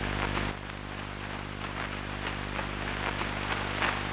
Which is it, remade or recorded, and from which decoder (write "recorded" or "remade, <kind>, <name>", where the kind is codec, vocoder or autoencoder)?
recorded